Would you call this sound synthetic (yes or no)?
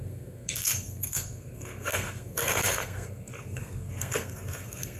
yes